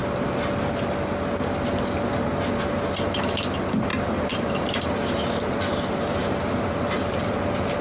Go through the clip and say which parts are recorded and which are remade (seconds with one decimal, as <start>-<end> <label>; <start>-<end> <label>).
0.0-3.9 recorded; 3.9-7.8 remade